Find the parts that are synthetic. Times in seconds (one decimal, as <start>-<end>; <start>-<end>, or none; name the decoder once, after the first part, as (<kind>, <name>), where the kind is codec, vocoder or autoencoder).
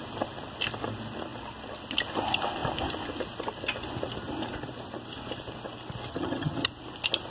6.1-6.7 (vocoder, HiFi-GAN)